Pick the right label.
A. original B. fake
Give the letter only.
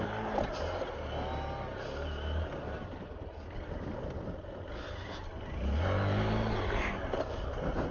A